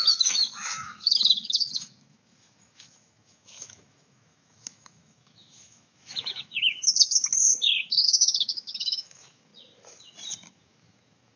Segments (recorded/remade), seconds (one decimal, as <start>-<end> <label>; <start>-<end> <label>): 0.0-9.5 remade; 9.5-10.5 recorded; 10.5-11.4 remade